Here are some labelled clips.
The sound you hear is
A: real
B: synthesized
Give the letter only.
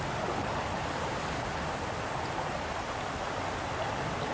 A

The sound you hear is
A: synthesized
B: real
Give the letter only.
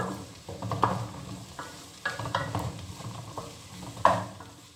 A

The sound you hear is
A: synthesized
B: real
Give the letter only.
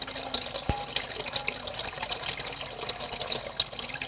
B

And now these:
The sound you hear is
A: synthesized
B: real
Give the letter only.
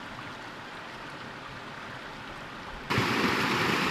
B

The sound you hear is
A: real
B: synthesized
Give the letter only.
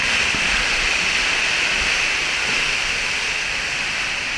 A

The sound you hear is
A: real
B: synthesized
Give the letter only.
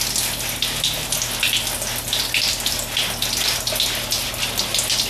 A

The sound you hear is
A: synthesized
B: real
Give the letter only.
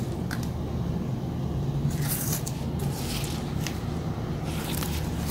B